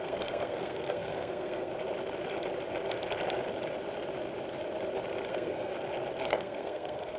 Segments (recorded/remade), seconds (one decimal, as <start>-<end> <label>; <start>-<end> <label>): 0.0-1.7 remade; 1.7-5.3 recorded; 5.3-5.7 remade; 5.7-6.2 recorded; 6.2-7.2 remade